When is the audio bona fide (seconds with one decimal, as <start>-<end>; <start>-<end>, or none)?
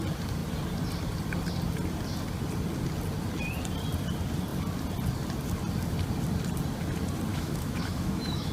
0.0-7.3